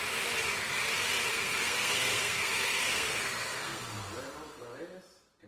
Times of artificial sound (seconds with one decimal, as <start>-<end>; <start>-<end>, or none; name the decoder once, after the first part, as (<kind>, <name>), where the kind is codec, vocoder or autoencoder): 1.3-3.9 (codec, SNAC)